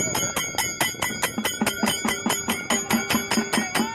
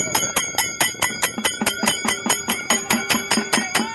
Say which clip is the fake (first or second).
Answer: second